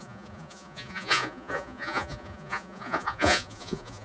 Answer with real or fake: fake